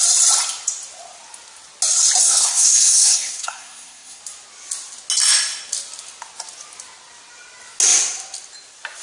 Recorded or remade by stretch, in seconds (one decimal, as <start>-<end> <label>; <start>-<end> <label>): 0.0-2.2 recorded; 2.2-4.2 remade; 4.2-9.0 recorded